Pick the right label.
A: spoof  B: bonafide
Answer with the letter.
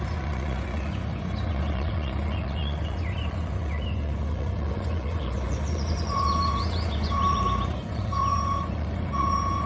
A